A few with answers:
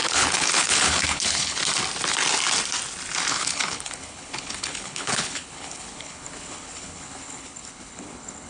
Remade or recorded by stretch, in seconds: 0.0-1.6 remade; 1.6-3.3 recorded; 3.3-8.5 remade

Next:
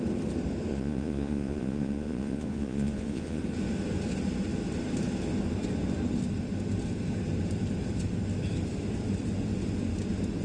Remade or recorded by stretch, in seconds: 0.0-0.7 recorded; 0.7-3.4 remade; 3.4-10.4 recorded

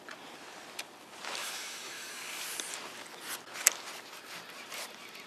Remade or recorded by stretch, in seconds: 0.0-1.4 recorded; 1.4-2.1 remade; 2.1-5.3 recorded

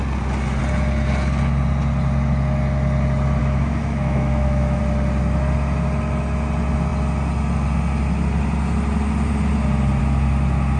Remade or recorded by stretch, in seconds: 0.0-3.4 recorded; 3.4-4.8 remade; 4.8-10.8 recorded

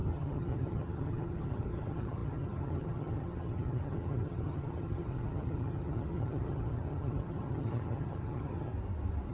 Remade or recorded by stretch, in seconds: 0.0-8.7 remade; 8.7-9.3 recorded